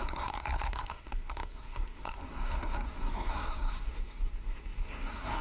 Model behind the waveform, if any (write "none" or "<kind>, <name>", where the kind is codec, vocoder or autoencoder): codec, SNAC